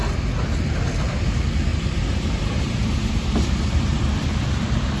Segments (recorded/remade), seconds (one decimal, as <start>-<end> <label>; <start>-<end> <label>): 0.0-1.7 recorded; 1.7-5.0 remade